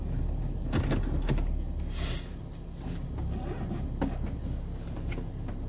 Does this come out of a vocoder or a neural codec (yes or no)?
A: no